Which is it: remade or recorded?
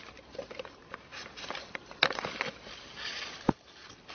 recorded